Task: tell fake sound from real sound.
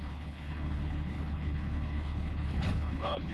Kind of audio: fake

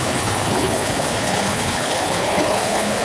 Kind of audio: fake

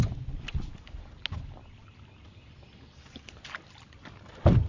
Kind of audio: real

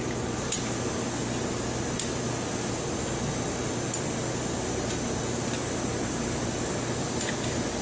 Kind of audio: real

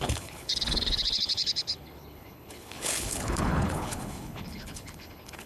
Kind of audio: fake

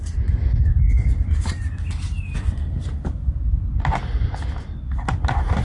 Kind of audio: real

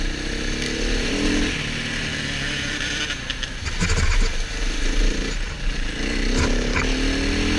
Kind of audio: real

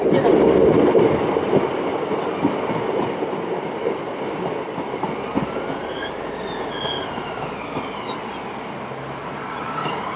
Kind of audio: real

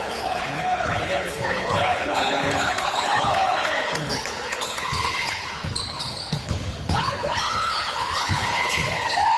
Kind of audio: fake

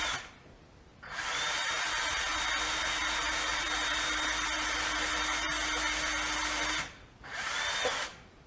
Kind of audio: real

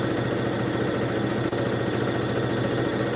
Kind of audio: real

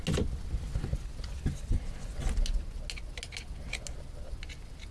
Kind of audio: real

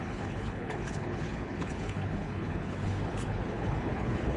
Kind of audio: fake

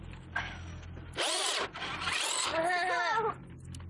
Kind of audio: real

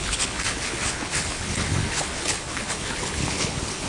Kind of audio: fake